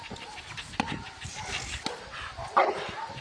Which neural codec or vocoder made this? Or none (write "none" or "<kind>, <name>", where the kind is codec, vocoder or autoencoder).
none